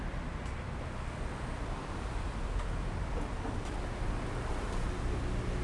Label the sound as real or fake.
real